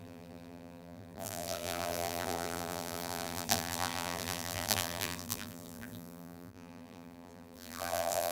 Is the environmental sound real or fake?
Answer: fake